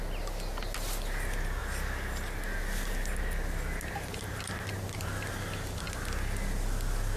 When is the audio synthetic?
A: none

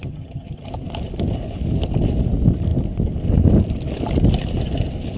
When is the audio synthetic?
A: 0.0-0.7 (vocoder, HiFi-GAN)